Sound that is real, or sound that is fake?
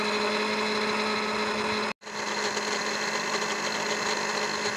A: real